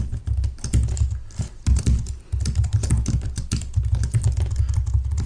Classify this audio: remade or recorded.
recorded